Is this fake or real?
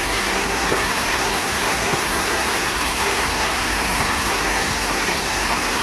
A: fake